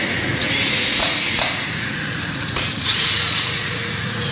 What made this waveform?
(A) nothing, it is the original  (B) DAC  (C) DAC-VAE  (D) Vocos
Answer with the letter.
D